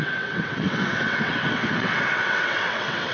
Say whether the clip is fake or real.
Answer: fake